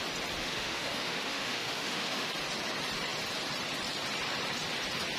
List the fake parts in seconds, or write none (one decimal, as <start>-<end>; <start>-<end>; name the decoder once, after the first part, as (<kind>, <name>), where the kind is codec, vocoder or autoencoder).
0.4-2.3 (autoencoder, DAC-VAE)

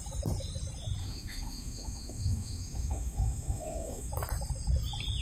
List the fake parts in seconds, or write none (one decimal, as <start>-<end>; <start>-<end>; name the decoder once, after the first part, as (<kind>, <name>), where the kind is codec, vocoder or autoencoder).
1.0-4.1 (autoencoder, DAC-VAE)

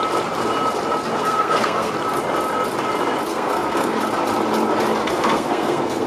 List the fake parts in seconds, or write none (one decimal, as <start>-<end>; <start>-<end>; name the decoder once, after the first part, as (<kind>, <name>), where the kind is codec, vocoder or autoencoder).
1.2-1.9 (codec, SNAC); 3.3-4.0; 5.0-6.1

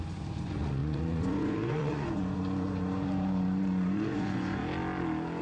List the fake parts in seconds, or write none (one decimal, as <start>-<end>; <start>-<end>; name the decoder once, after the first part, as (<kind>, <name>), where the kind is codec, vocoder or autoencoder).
0.0-4.6 (vocoder, Vocos)

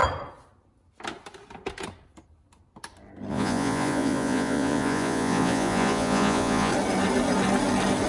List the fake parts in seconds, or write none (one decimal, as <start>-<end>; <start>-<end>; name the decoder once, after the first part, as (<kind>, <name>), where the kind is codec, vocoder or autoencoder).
3.3-6.7 (vocoder, Vocos)